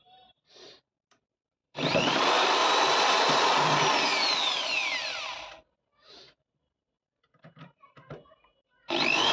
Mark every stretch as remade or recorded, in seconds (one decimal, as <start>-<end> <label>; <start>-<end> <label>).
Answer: 0.0-2.6 remade; 2.6-6.1 recorded; 6.1-9.3 remade